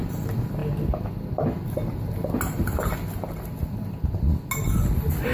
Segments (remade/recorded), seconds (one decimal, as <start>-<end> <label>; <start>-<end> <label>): 0.0-5.3 recorded